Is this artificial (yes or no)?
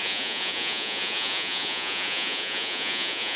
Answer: yes